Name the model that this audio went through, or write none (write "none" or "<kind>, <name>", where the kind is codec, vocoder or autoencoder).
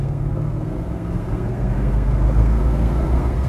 codec, SNAC